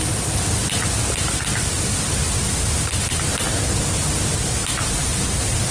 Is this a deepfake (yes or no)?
no